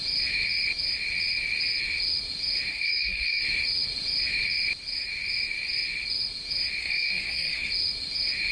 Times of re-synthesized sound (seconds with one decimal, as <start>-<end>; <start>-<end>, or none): 2.7-3.4; 6.8-7.7